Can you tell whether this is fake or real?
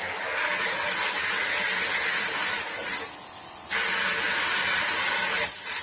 real